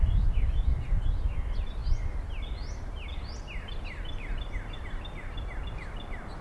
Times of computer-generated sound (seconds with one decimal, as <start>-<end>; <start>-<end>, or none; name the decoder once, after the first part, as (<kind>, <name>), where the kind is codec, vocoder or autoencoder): none